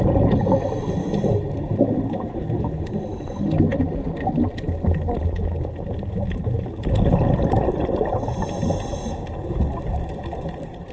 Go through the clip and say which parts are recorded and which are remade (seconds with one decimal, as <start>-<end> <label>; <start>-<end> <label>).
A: 0.0-10.9 recorded